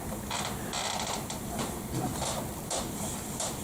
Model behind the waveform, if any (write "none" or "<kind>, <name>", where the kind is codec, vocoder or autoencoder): vocoder, BigVGAN v2